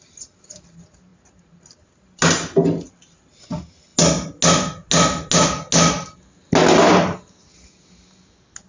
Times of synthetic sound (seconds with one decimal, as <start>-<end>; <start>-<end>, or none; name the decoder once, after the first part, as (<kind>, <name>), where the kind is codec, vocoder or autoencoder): none